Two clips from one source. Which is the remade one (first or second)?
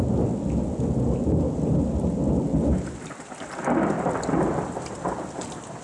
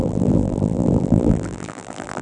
second